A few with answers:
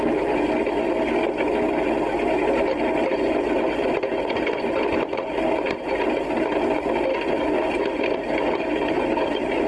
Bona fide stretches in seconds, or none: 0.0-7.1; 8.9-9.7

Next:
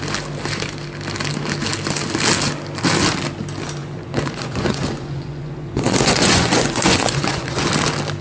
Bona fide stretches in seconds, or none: 0.0-3.8; 7.7-8.2

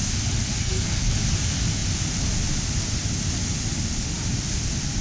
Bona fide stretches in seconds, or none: 0.0-0.6; 1.1-5.0

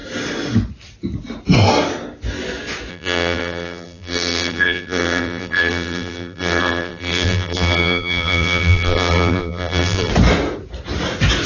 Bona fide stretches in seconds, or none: 0.0-2.9; 10.1-11.5

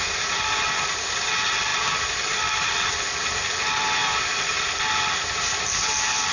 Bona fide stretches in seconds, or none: 0.0-6.3

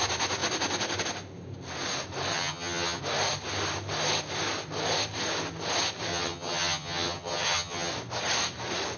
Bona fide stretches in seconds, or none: 0.0-2.3; 3.0-6.1; 7.9-9.0

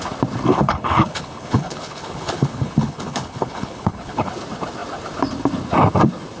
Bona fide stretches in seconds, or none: 0.0-0.5; 4.3-6.4

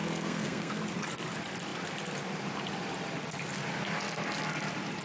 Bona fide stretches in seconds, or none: 0.8-5.0